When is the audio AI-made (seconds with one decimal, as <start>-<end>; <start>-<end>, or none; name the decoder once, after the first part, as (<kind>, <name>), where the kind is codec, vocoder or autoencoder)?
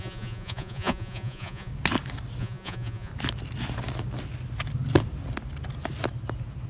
0.0-1.7 (vocoder, Vocos); 2.4-3.1